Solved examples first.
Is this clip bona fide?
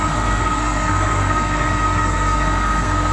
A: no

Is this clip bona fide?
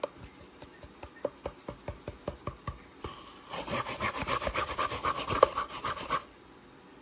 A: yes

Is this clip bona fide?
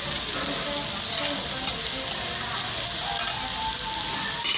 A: yes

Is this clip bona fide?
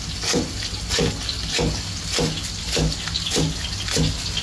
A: yes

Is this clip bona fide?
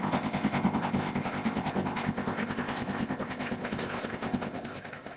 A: no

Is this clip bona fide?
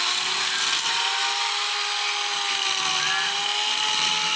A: yes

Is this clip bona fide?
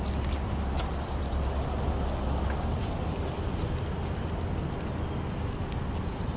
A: yes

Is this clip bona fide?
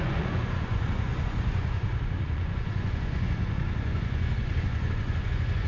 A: no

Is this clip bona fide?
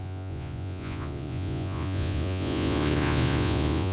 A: no